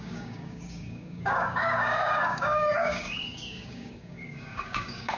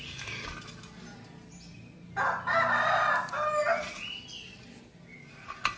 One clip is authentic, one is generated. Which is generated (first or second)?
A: first